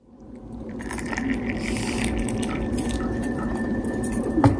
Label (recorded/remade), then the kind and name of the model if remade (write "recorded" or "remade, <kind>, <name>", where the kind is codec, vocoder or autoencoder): remade, vocoder, BigVGAN v2